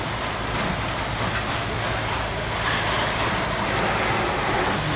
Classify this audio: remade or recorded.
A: recorded